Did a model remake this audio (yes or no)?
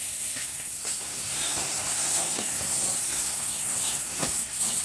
yes